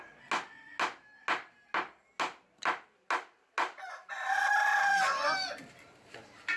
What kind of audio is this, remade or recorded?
recorded